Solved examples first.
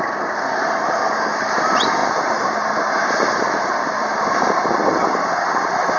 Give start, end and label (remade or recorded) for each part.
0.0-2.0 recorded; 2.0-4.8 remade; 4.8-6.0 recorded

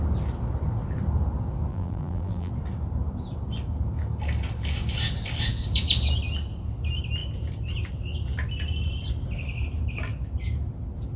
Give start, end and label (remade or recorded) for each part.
0.0-1.7 recorded; 1.7-2.5 remade; 2.5-11.2 recorded